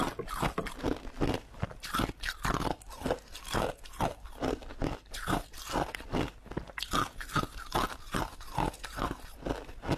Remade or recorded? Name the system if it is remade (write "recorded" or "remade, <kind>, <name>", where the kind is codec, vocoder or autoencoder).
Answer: recorded